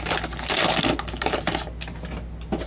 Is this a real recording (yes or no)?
yes